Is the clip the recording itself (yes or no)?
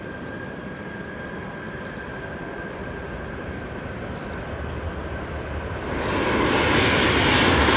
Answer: yes